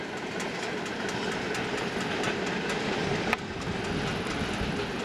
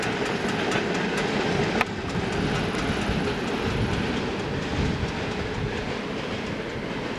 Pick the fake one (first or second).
first